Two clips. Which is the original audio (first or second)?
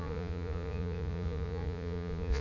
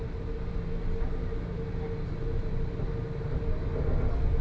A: second